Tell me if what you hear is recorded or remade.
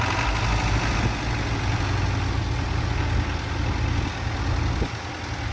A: recorded